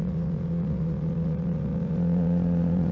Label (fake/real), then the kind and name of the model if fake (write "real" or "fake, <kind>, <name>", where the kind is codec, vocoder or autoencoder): fake, vocoder, Vocos